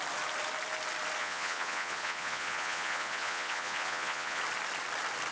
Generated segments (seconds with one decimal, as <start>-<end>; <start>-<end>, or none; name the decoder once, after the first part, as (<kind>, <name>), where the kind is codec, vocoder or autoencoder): 1.2-4.4 (vocoder, Vocos)